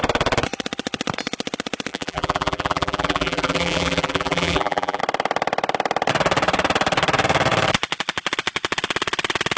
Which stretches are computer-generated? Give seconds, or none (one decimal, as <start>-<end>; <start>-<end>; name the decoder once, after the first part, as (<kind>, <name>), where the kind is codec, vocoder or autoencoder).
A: 1.9-5.0 (vocoder, BigVGAN v2)